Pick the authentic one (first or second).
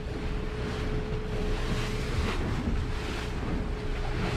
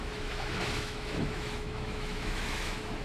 first